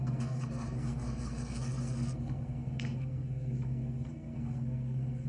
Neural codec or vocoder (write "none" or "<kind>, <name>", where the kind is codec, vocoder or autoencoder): codec, SNAC